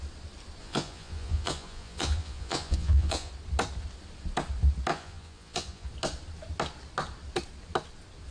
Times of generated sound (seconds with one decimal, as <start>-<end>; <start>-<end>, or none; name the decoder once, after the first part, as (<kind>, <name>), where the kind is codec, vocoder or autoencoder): 0.6-3.3 (vocoder, Vocos); 4.9-5.9